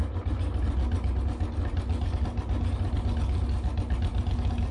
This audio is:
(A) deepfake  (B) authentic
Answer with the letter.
B